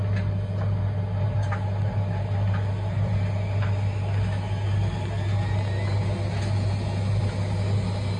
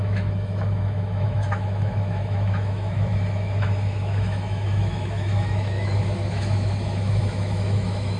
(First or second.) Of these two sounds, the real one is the first